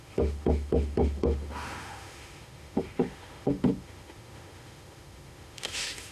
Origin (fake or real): fake